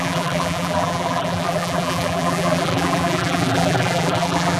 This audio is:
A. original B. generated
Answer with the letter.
B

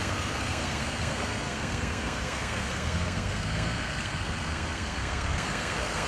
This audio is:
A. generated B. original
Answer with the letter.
A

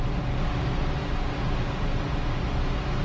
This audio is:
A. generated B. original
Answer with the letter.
B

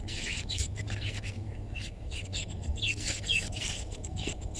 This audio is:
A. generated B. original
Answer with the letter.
A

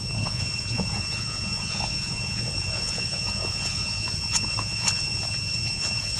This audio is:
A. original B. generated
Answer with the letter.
B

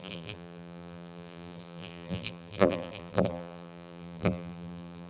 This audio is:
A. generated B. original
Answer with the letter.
A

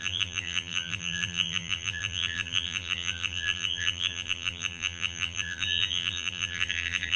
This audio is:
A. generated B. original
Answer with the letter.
A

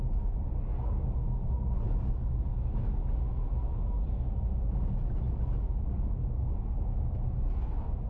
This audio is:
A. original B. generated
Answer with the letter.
A